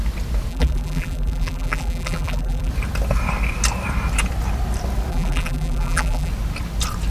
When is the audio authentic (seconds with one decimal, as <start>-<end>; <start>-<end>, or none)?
0.0-0.5; 2.7-5.1; 6.3-7.1